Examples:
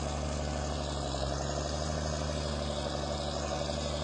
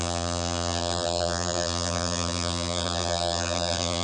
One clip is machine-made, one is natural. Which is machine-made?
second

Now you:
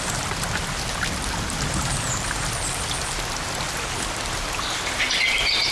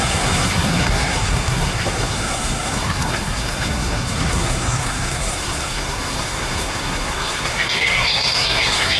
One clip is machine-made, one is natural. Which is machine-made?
second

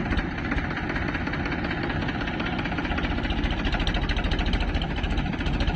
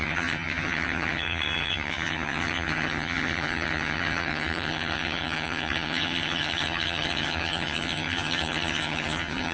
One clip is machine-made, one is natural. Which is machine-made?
second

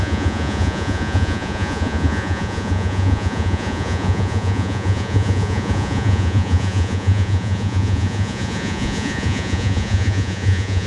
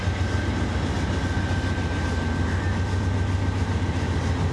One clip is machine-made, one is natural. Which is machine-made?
first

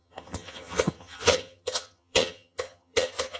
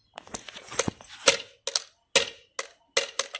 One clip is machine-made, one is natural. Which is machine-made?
first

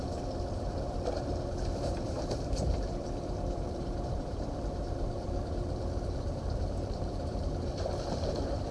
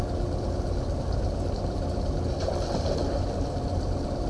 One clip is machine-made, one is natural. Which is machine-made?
first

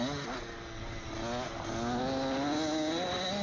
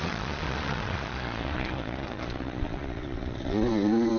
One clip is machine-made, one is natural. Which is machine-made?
second